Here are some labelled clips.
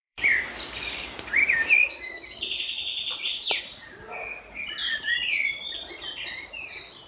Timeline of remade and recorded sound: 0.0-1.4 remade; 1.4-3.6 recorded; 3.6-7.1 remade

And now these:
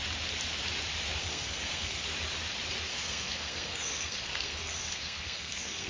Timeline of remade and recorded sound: 0.0-1.2 recorded; 1.2-2.0 remade; 2.0-2.9 recorded; 2.9-5.9 remade